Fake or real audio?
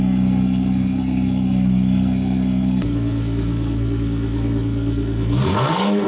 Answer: fake